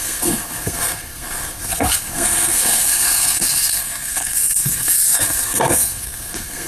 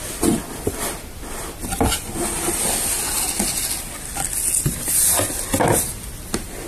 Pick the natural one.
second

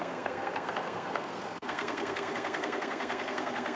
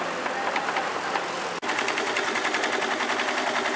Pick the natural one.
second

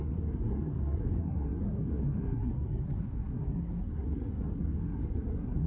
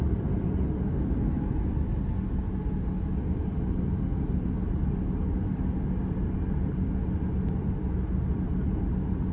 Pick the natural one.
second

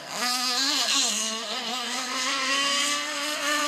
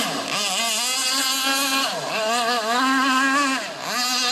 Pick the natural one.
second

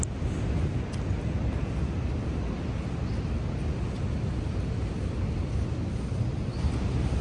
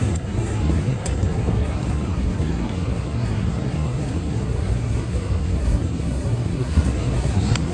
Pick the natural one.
first